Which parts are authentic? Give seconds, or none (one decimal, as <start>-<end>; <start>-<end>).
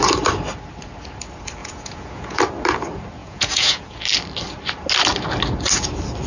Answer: 0.0-1.6; 2.4-3.2; 4.0-6.3